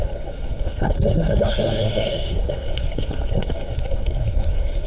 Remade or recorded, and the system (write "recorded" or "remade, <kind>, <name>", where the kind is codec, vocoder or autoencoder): remade, codec, SNAC